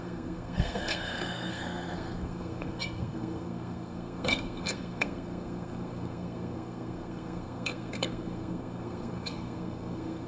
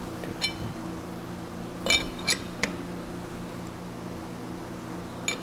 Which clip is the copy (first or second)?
first